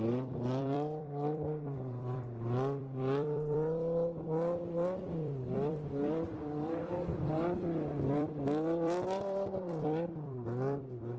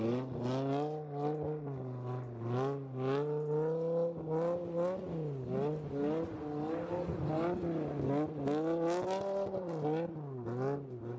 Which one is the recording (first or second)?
second